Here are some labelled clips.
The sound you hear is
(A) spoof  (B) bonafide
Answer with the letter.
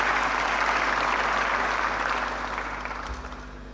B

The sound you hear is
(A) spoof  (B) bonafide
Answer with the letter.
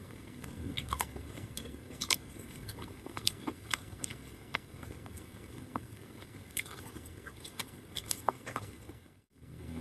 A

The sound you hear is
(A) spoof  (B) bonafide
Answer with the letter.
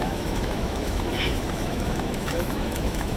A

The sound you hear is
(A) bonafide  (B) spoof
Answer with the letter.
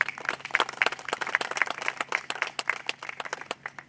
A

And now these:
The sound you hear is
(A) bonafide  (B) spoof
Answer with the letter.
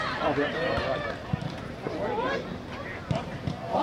A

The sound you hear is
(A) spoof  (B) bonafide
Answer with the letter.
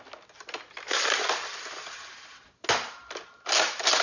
B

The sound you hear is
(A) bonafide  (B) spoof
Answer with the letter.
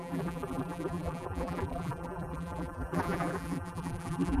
B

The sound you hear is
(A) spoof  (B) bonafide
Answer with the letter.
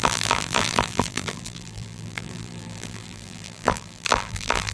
A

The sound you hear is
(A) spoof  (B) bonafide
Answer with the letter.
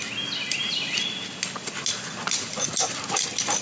B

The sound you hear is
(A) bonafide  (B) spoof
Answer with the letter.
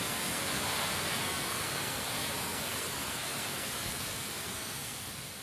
B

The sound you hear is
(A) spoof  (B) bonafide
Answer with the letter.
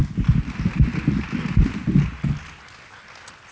B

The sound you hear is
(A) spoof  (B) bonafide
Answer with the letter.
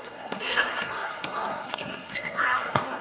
A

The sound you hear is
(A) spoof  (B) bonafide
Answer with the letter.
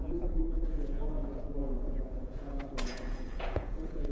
A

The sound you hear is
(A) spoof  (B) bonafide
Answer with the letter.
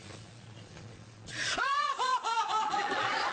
A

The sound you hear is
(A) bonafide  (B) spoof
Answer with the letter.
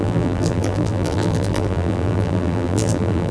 B